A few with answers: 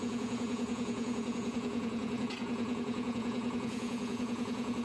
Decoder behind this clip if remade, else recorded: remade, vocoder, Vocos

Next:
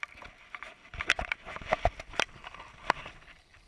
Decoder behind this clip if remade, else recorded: recorded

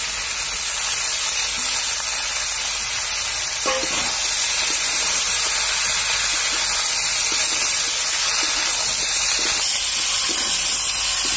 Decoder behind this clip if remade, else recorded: recorded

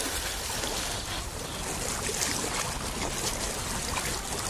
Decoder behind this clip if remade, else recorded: recorded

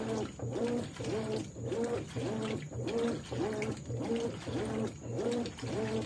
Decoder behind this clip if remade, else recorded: recorded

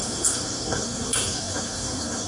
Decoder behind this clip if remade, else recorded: remade, codec, SNAC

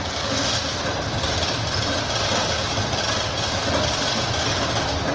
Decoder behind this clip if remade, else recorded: recorded